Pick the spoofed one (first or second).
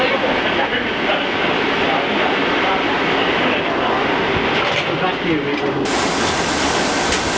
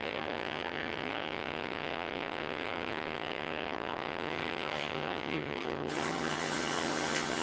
second